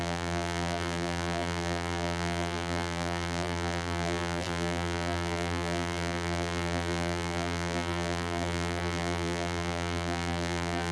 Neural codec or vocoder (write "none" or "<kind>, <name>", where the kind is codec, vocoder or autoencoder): vocoder, BigVGAN v2